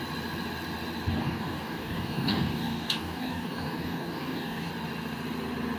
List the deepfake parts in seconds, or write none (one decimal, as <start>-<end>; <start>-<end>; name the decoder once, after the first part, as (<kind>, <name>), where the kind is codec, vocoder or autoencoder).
1.2-4.7 (codec, DAC)